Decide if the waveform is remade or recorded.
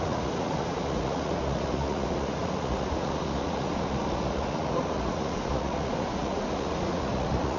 remade